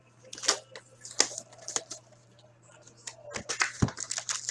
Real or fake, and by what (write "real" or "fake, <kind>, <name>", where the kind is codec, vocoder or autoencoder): real